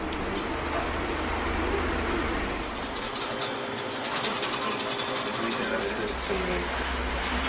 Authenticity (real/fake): real